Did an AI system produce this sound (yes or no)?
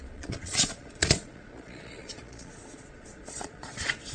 yes